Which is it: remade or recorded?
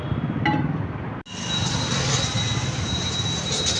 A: recorded